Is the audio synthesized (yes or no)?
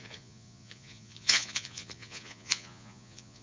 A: yes